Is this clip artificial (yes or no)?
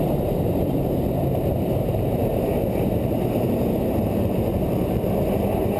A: yes